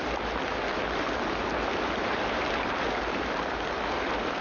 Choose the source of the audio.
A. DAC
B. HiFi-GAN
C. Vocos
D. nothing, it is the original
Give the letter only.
D